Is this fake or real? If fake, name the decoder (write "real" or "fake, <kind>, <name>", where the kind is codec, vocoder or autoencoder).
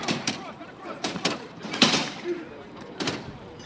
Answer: fake, vocoder, BigVGAN v2